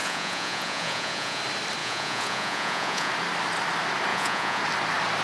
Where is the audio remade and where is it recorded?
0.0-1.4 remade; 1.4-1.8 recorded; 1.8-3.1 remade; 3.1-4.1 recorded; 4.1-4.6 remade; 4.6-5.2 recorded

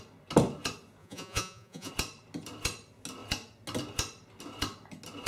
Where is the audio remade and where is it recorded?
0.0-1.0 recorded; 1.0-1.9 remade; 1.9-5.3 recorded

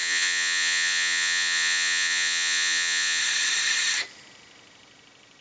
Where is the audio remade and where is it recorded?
0.0-3.2 remade; 3.2-5.4 recorded